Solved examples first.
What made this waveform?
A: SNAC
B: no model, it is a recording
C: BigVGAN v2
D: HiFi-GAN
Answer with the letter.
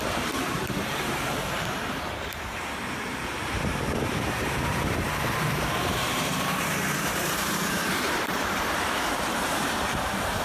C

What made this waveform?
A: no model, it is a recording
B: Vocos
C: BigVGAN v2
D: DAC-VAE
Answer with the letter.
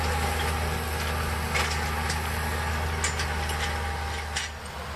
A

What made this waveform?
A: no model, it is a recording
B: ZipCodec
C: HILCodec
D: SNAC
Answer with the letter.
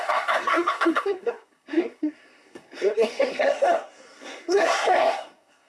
D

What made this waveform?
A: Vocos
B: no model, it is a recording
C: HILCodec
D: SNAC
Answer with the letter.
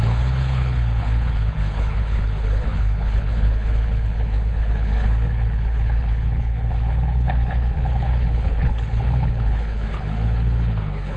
C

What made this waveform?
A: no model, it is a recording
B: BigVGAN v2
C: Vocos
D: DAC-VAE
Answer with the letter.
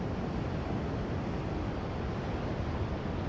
A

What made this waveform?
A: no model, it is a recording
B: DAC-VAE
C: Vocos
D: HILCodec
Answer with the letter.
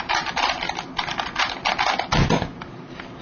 A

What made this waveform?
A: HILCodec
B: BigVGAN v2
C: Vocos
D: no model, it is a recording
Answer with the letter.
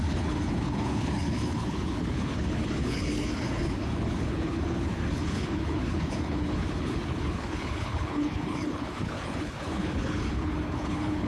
A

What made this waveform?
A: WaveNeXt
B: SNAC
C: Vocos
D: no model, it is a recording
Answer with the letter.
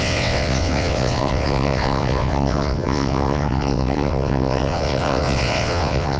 A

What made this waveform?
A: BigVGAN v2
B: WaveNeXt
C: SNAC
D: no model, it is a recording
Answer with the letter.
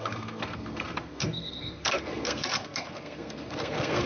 C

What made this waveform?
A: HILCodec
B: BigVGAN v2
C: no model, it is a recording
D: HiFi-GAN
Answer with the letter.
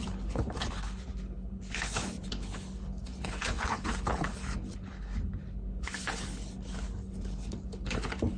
A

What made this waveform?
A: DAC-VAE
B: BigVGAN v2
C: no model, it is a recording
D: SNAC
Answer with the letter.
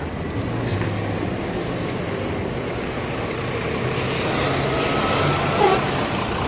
C